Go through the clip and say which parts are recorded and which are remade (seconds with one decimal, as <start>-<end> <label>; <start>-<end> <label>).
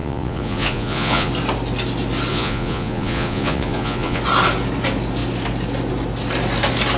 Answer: 0.0-1.3 remade; 1.3-2.3 recorded; 2.3-4.2 remade; 4.2-7.0 recorded